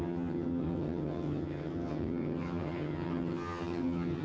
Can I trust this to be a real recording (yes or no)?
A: no